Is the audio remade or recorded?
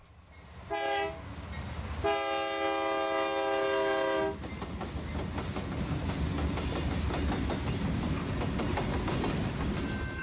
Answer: recorded